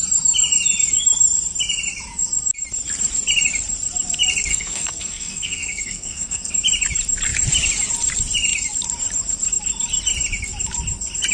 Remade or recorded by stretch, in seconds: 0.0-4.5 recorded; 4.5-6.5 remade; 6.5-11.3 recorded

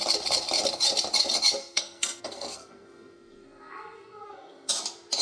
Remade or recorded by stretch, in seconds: 0.0-1.6 recorded; 1.6-4.7 remade; 4.7-5.2 recorded

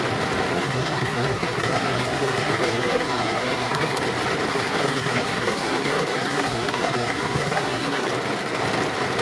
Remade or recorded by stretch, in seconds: 0.0-0.5 recorded; 0.5-4.0 remade; 4.0-4.5 recorded; 4.5-8.1 remade; 8.1-9.2 recorded

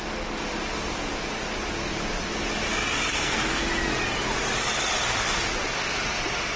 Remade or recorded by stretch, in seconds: 0.0-3.1 recorded; 3.1-3.6 remade; 3.6-6.6 recorded

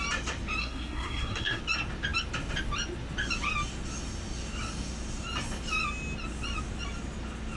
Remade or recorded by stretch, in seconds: 0.0-0.6 recorded; 0.6-1.6 remade; 1.6-7.6 recorded

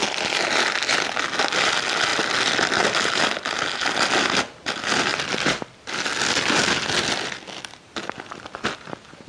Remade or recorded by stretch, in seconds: 0.0-9.3 recorded

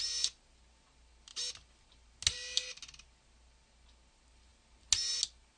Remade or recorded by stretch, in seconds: 0.0-5.6 recorded